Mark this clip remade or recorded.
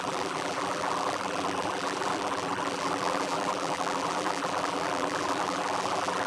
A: remade